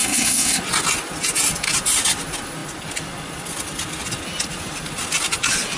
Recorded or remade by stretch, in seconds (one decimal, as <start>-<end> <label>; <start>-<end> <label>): 0.0-0.6 remade; 0.6-5.8 recorded